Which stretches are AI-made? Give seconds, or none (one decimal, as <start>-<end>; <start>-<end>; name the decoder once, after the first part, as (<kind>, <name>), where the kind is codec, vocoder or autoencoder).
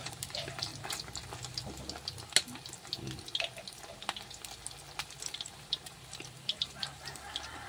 0.0-0.7 (vocoder, BigVGAN v2); 5.3-7.7